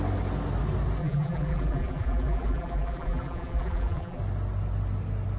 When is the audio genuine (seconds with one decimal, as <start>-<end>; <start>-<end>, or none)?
0.0-1.0; 4.2-5.4

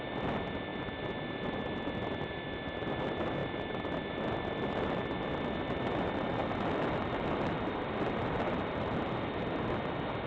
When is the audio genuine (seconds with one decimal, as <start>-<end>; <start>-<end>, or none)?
0.0-6.4; 9.0-10.3

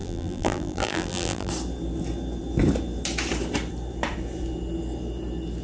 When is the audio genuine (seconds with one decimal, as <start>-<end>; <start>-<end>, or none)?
1.5-5.6

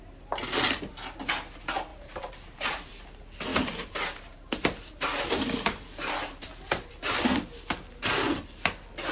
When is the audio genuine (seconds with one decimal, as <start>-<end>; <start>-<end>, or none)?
0.0-1.9; 3.0-3.5; 6.9-9.1